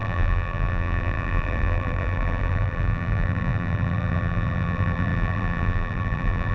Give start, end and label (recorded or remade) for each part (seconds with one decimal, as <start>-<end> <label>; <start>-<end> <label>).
0.0-6.5 remade